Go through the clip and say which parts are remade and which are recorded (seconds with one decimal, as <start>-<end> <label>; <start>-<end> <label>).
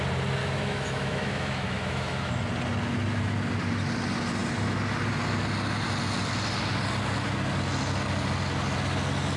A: 0.0-0.4 recorded; 0.4-2.3 remade; 2.3-9.4 recorded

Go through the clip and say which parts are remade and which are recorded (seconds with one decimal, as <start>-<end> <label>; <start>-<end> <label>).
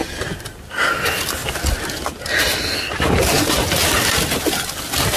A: 0.0-5.2 recorded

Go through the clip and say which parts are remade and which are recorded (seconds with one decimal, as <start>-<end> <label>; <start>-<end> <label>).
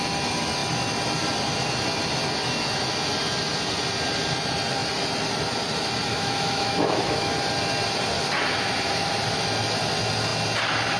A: 0.0-6.1 recorded; 6.1-7.3 remade; 7.3-11.0 recorded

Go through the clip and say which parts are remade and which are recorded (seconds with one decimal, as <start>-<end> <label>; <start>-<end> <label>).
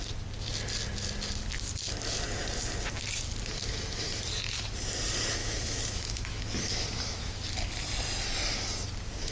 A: 0.0-5.4 recorded; 5.4-7.4 remade; 7.4-9.3 recorded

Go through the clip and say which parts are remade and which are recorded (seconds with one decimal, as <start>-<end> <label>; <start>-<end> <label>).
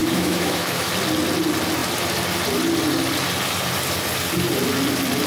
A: 0.0-0.9 remade; 0.9-5.3 recorded